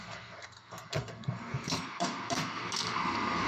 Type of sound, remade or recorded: remade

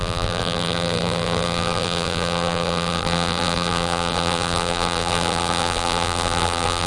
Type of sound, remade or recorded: remade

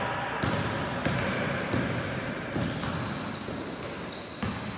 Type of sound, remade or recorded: recorded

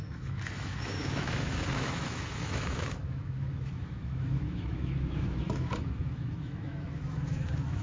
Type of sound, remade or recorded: remade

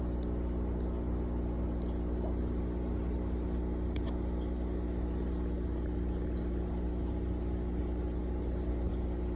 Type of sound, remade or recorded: recorded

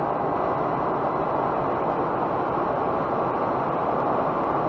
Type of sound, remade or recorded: recorded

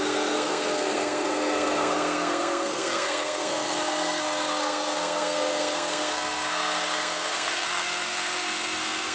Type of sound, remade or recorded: remade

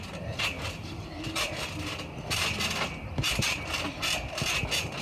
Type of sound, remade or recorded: recorded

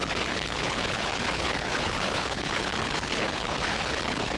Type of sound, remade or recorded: remade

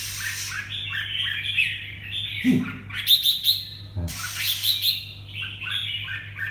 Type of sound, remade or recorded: recorded